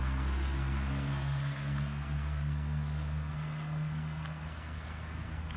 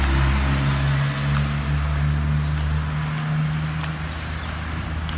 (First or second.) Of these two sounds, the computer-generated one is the first